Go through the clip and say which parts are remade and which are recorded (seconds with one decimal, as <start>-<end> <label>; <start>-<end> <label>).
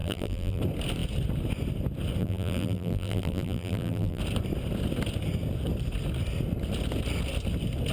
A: 0.0-0.6 remade; 0.6-2.2 recorded; 2.2-4.2 remade; 4.2-7.9 recorded